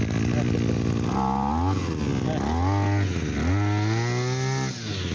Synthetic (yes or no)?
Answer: no